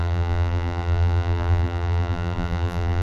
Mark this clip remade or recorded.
remade